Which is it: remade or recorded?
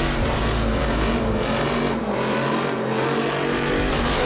remade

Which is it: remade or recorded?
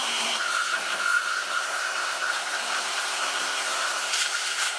remade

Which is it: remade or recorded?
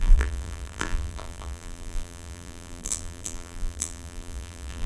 remade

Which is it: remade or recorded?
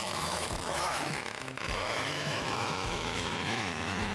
remade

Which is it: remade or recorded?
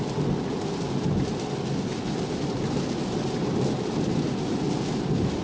recorded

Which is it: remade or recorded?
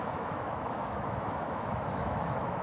remade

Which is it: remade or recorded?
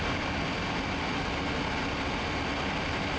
recorded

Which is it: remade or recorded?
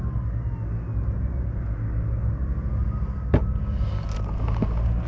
recorded